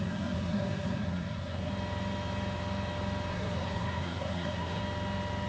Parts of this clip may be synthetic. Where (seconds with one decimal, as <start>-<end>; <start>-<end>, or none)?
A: 0.0-1.7; 3.3-4.8